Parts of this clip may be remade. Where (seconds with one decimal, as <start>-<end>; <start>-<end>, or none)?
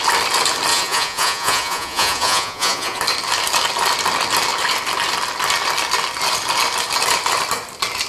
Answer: 0.7-3.0